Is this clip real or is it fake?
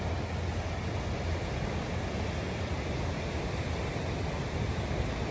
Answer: real